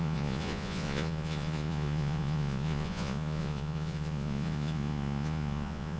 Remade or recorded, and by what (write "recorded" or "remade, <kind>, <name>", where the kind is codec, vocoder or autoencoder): remade, vocoder, Vocos